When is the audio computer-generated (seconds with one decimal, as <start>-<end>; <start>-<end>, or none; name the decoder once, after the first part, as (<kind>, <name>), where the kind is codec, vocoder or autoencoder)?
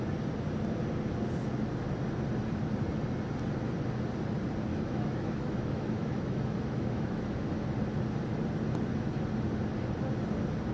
4.7-7.5 (autoencoder, DAC-VAE)